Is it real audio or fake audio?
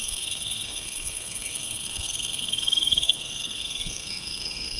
fake